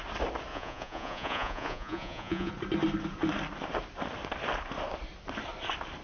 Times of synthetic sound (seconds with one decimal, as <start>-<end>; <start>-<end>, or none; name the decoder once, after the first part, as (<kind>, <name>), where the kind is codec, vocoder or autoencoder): 0.5-2.5 (vocoder, Vocos)